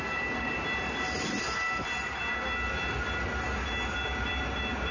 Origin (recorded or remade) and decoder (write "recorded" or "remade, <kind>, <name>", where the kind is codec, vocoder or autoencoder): recorded